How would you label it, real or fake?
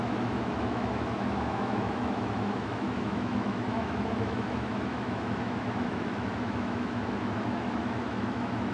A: fake